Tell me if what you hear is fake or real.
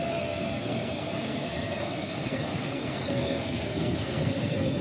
fake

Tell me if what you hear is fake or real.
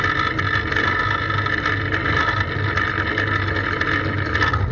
real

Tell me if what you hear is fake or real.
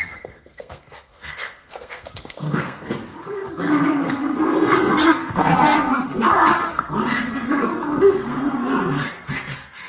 fake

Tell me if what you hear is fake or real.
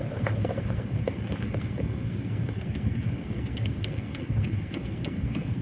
fake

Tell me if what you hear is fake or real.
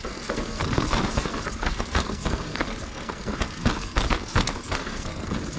fake